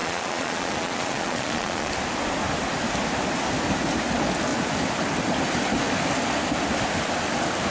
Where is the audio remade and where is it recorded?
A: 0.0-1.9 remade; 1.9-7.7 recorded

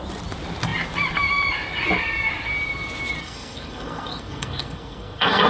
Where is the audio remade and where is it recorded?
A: 0.0-3.2 recorded; 3.2-5.5 remade

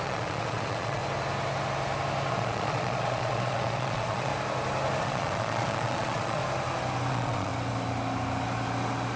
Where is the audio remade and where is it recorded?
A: 0.0-1.0 remade; 1.0-2.3 recorded; 2.3-4.3 remade; 4.3-5.0 recorded; 5.0-6.4 remade; 6.4-7.1 recorded; 7.1-7.5 remade; 7.5-9.2 recorded